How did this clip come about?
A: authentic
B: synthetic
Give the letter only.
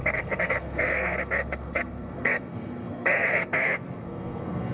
B